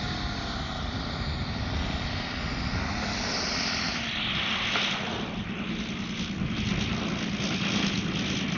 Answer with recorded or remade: recorded